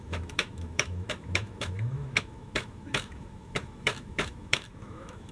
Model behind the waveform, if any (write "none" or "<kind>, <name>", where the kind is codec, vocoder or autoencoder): autoencoder, DAC-VAE